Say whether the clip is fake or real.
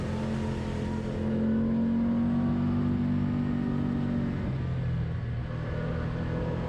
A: real